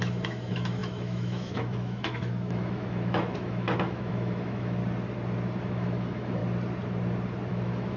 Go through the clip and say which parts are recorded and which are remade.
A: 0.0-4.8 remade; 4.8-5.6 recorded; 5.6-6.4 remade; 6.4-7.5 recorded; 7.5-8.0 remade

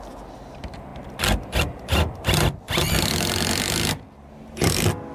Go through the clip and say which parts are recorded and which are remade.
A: 0.0-5.1 recorded